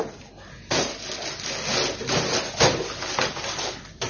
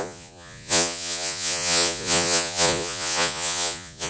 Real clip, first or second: first